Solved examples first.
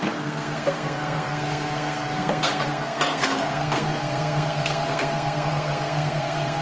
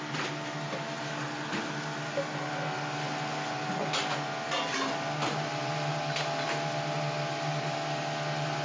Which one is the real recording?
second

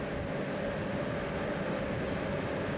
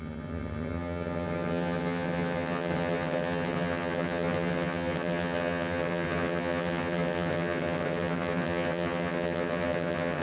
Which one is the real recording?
first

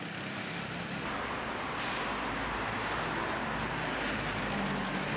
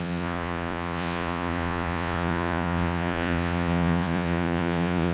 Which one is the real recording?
first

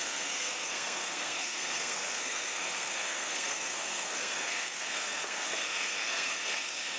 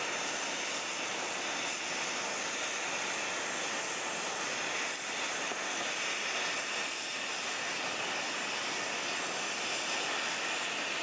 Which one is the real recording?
second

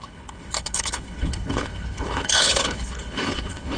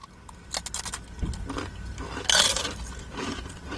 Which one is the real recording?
second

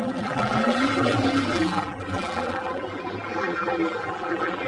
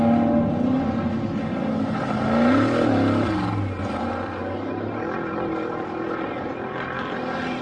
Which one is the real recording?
second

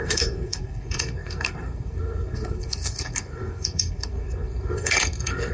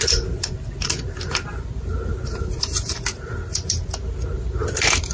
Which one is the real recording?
second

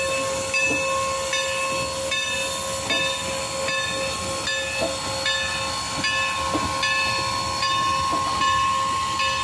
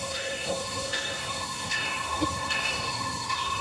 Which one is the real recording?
first